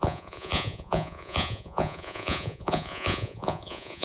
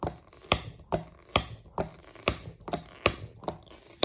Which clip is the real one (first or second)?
second